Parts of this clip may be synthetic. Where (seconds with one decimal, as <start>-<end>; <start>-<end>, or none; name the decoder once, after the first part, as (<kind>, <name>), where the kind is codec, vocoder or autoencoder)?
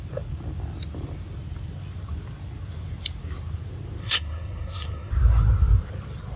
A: 4.0-5.1 (codec, SNAC)